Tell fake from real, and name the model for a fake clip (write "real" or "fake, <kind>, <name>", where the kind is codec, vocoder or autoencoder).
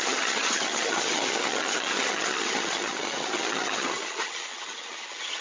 fake, vocoder, HiFi-GAN